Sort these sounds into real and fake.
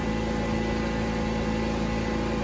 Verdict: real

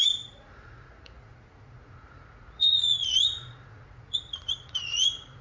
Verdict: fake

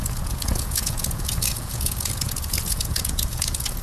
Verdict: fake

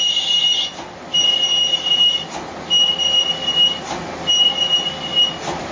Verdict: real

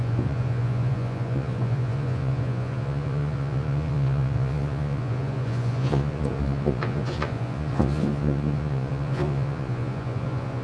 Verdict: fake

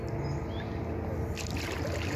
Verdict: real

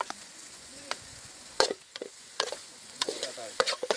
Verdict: fake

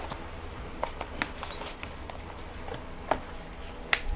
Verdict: real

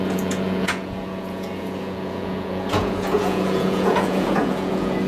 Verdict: fake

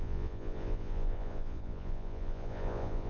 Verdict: fake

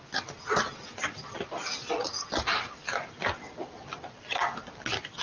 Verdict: real